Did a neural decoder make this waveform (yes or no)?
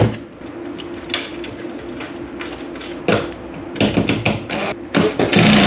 no